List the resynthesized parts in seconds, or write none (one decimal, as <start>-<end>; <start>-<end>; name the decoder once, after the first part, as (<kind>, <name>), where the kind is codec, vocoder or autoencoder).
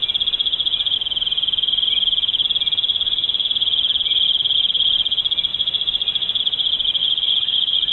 2.9-3.5 (vocoder, Vocos); 5.5-6.4; 7.0-7.9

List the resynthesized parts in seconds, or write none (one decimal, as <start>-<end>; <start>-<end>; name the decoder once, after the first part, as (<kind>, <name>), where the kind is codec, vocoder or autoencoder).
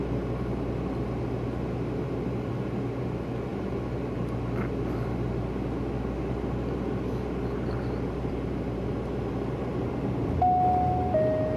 none